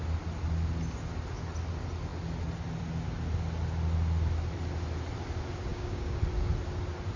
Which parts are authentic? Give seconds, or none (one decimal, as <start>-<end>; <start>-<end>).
0.0-5.7; 6.2-7.2